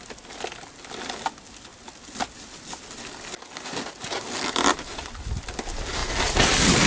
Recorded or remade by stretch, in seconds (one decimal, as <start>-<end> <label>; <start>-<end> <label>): 0.0-6.9 recorded